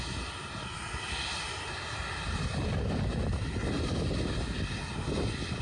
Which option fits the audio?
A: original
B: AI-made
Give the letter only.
A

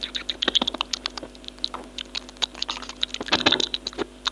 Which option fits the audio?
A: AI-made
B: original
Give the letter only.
B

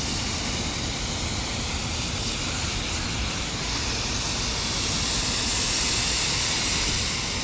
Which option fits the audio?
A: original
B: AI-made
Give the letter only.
A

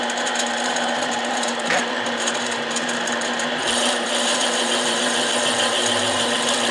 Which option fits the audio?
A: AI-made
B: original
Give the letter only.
A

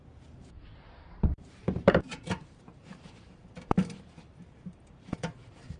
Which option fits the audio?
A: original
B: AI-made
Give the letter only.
B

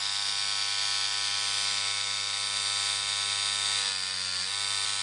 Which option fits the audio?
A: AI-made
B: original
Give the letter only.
B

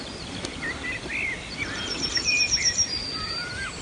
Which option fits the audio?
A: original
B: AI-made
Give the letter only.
B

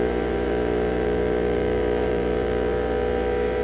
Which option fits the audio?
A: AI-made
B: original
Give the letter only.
A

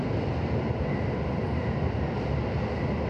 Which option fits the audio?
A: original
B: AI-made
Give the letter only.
A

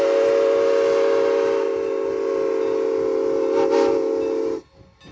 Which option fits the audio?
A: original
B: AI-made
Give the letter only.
A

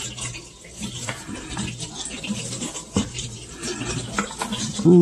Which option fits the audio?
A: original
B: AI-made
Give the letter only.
B